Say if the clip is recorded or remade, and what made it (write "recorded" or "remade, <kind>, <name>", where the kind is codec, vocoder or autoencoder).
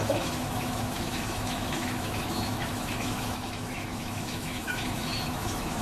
remade, autoencoder, DAC-VAE